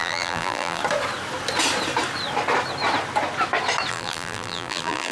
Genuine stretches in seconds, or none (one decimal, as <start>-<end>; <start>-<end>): 0.8-3.9

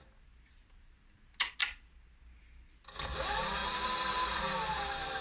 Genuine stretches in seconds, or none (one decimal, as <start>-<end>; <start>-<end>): 0.0-5.2

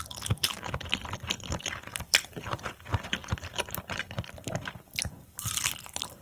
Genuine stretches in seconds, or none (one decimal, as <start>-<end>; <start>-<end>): none

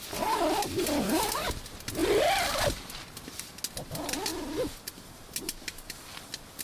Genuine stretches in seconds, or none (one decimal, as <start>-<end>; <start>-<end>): 0.0-2.0; 2.6-6.6

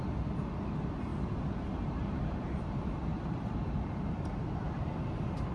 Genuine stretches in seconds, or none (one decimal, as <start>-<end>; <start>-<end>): 0.0-1.1; 4.4-5.5